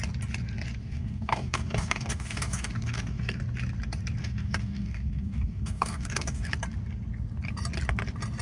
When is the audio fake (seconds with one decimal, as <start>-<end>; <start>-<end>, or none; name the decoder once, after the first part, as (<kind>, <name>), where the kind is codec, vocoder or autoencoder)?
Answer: 0.8-3.4 (codec, DAC); 4.2-6.5